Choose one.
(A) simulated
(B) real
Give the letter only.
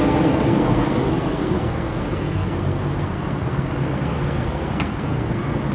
A